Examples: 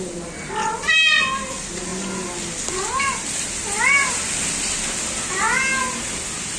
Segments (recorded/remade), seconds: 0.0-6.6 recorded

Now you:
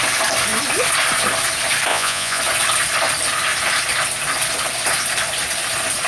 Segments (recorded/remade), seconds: 0.0-1.9 recorded; 1.9-2.4 remade; 2.4-6.1 recorded

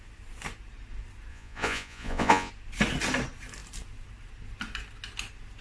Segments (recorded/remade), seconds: 0.0-1.3 recorded; 1.3-2.5 remade; 2.5-5.6 recorded

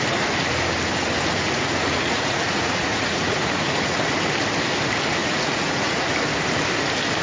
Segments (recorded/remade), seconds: 0.0-1.3 recorded; 1.3-4.0 remade; 4.0-5.2 recorded; 5.2-6.1 remade; 6.1-7.2 recorded

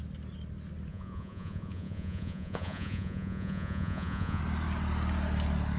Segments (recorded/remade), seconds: 0.0-0.9 recorded; 0.9-4.4 remade; 4.4-5.8 recorded